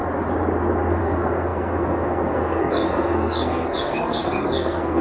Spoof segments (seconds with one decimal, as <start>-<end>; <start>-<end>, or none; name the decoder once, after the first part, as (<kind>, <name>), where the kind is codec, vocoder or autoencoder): 1.0-5.0 (codec, SNAC)